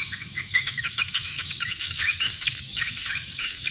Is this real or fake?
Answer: fake